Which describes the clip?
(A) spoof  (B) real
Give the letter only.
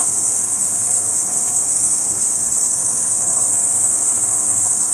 A